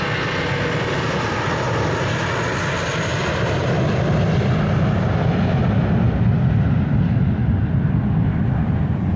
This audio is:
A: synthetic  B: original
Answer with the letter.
B